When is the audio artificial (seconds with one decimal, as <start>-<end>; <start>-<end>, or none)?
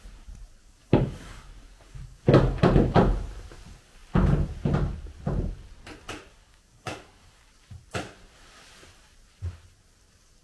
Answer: 0.6-2.6; 6.3-7.5